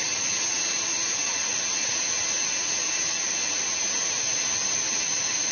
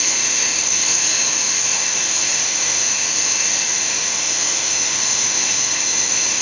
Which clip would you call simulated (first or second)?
second